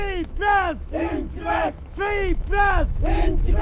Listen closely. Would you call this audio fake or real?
fake